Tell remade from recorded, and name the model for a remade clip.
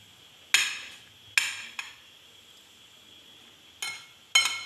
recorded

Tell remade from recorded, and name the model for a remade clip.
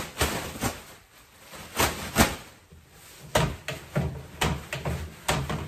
recorded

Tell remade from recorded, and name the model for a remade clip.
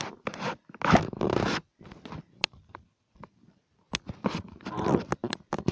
recorded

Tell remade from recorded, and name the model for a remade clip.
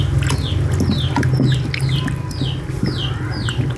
recorded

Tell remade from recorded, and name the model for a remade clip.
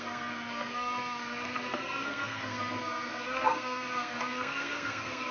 remade, codec, SNAC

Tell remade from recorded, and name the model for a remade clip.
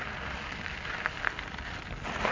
recorded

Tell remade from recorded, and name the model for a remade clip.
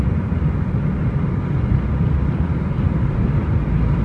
recorded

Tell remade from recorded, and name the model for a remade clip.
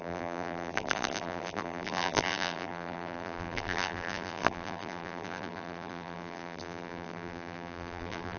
remade, vocoder, BigVGAN v2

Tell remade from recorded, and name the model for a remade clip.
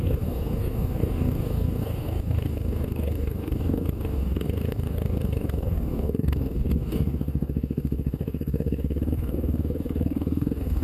remade, codec, DAC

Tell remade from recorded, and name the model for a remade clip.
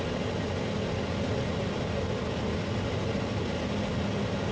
recorded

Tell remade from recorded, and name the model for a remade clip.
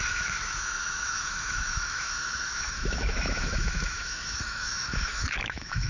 remade, autoencoder, DAC-VAE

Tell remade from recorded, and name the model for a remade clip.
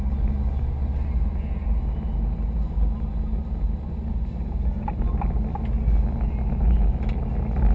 recorded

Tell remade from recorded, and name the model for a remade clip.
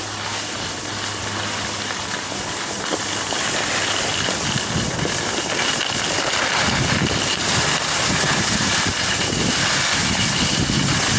recorded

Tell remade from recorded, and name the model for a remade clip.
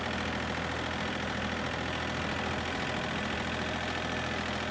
recorded